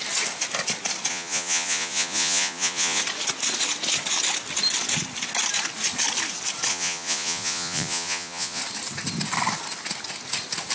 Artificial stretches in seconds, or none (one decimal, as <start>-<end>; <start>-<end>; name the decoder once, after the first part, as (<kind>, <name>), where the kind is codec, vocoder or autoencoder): 1.1-3.0 (vocoder, Vocos); 6.7-8.6